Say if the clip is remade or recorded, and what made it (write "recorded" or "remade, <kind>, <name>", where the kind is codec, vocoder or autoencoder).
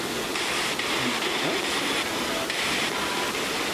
recorded